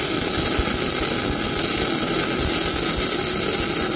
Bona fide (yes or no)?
yes